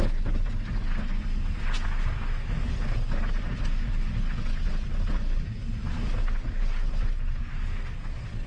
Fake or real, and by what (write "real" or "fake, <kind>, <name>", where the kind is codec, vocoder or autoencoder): real